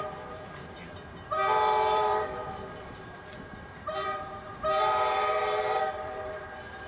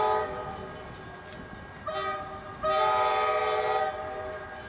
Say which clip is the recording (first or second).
second